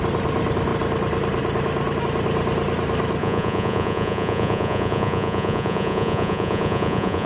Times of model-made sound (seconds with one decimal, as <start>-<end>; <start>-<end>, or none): 3.2-7.3

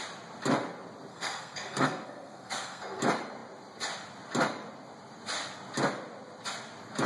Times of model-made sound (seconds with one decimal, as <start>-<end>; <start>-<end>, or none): 1.1-3.0

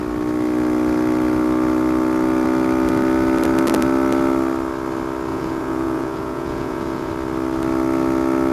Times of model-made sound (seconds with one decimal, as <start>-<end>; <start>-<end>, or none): 5.3-7.1

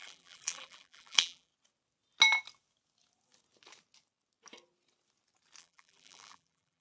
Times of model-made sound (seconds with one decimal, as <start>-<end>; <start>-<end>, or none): 0.0-1.5; 5.6-6.8

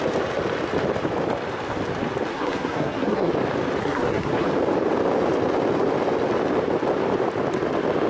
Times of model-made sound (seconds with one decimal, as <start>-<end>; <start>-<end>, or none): 2.3-3.3; 3.8-4.5